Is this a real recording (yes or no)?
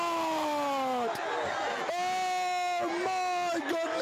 yes